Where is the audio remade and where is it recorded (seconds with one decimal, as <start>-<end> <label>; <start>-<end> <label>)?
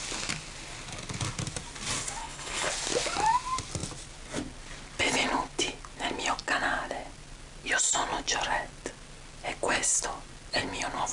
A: 0.0-2.2 recorded; 2.2-2.7 remade; 2.7-11.1 recorded